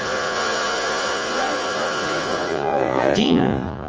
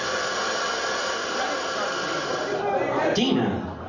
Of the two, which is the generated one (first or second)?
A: first